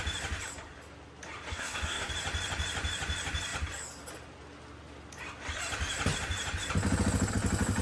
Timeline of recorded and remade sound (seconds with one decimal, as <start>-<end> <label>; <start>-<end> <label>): 0.0-1.5 recorded; 1.5-2.1 remade; 2.1-7.8 recorded